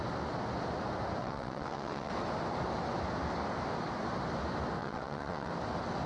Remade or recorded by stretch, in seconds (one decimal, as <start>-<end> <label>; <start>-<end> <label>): 0.0-1.2 recorded; 1.2-2.1 remade; 2.1-4.8 recorded; 4.8-5.5 remade; 5.5-6.1 recorded